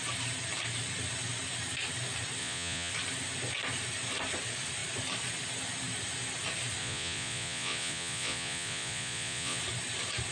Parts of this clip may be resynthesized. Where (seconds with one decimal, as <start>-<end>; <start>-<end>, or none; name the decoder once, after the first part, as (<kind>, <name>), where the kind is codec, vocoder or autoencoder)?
2.4-2.9 (vocoder, Vocos); 6.8-9.6